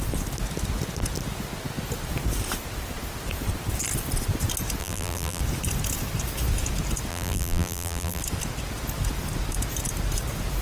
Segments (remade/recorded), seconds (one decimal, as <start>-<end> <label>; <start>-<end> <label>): 0.0-4.8 recorded; 4.8-5.4 remade; 5.4-7.1 recorded; 7.1-8.2 remade; 8.2-10.6 recorded